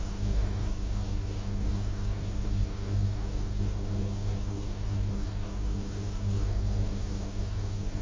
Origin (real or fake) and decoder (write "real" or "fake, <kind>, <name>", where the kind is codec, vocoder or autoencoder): fake, codec, DAC